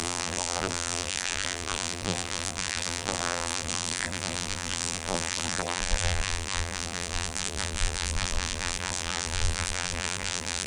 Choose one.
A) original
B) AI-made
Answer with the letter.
B